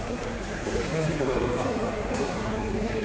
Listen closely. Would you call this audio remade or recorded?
remade